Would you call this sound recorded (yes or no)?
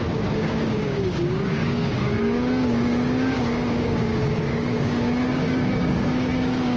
no